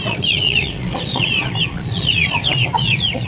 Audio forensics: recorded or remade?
remade